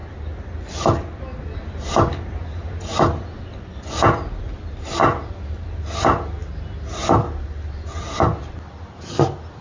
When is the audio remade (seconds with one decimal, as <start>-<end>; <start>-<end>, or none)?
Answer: none